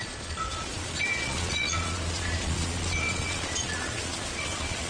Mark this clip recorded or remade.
remade